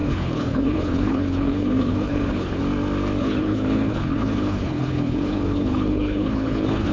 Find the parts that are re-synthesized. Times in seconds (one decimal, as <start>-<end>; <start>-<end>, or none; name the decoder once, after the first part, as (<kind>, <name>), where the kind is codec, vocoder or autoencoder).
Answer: 0.0-2.6 (codec, HILCodec); 3.2-6.9